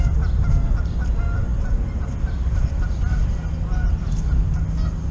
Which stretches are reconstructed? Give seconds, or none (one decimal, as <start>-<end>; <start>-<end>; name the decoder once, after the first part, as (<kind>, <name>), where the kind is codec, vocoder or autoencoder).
1.5-2.1 (vocoder, BigVGAN v2); 2.6-3.2